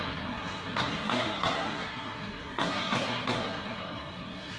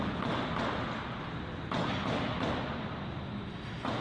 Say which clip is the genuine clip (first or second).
second